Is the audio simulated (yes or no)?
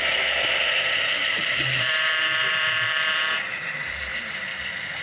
yes